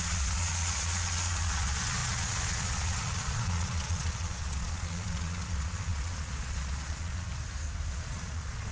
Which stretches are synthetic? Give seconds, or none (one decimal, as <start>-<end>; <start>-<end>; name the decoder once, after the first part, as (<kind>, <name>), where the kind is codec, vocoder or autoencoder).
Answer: 0.0-7.3 (vocoder, Vocos); 7.9-8.7